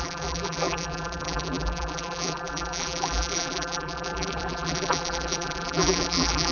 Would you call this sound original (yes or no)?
no